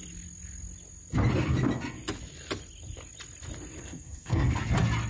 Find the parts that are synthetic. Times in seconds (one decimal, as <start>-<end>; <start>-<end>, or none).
3.8-4.6